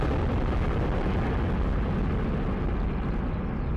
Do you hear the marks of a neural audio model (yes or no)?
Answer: no